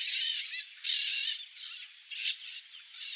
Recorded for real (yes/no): yes